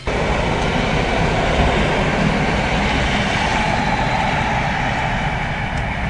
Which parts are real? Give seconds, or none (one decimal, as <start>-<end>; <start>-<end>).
0.0-6.1

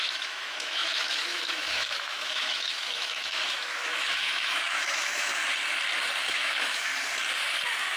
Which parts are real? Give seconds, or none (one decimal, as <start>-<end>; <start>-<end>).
5.4-6.2; 6.9-8.0

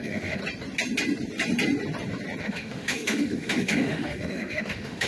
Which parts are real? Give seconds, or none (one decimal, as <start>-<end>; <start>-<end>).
0.4-2.4

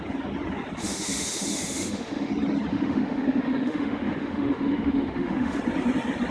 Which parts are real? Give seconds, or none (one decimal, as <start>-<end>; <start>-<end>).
0.0-0.8; 2.3-2.7; 5.6-6.3

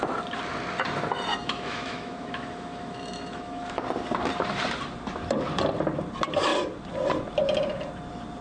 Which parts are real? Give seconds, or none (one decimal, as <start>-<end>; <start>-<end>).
0.0-1.3; 3.8-8.4

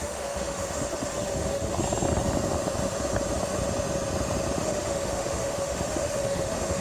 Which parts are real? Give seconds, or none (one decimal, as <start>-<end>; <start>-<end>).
1.8-4.6

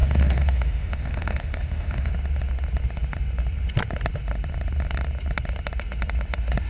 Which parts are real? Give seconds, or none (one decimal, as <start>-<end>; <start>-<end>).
2.1-6.7